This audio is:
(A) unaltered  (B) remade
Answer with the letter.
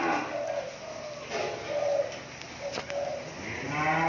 A